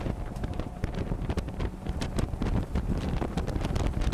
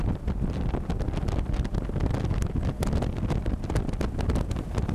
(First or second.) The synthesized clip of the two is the first